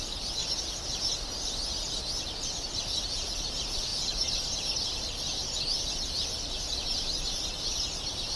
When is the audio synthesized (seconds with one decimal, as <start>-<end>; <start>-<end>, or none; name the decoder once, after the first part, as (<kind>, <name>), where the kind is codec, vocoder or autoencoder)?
none